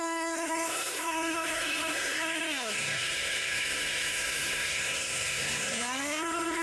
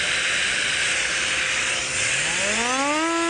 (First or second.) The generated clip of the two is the first